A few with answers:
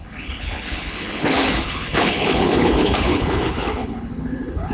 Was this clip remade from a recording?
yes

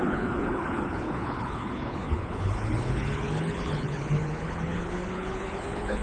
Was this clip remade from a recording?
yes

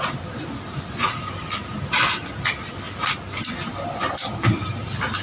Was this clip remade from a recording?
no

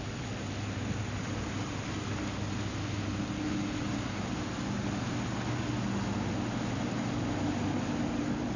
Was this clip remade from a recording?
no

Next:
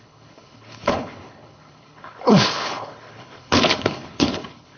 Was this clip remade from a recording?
yes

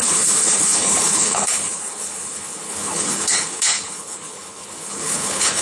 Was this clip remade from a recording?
yes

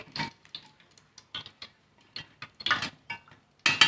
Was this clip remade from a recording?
no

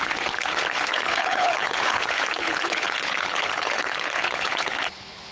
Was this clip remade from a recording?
yes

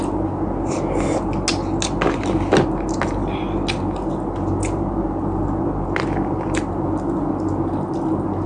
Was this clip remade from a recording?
no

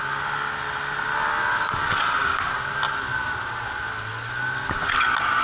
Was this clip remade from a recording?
no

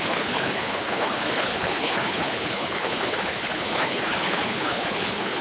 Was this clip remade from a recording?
yes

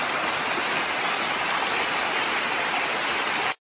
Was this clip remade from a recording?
no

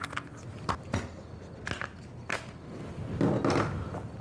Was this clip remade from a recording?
no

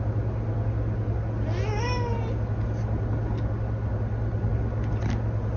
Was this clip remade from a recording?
no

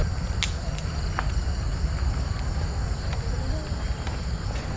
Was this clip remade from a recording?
no